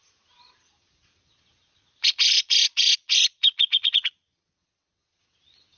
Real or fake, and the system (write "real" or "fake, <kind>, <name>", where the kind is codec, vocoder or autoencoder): fake, vocoder, Vocos